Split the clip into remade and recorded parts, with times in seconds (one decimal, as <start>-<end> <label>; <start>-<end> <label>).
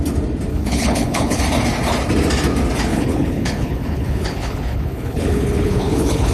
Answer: 0.0-0.5 recorded; 0.5-1.4 remade; 1.4-2.9 recorded; 2.9-6.3 remade